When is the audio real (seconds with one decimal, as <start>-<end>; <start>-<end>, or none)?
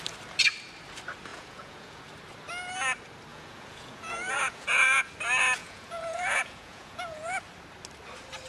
0.0-1.3; 2.0-3.3; 5.1-5.6; 7.4-8.5